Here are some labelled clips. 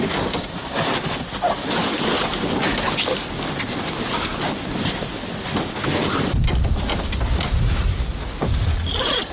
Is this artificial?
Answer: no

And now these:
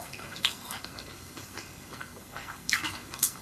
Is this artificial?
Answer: yes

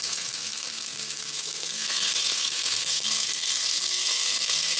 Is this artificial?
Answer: yes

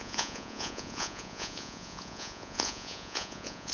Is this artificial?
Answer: yes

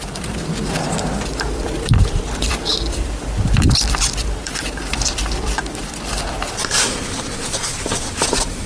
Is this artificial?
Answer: yes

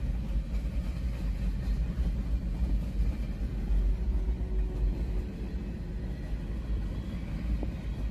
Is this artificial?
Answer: no